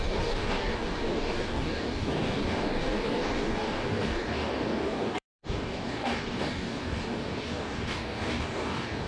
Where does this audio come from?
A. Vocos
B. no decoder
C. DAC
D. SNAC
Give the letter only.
C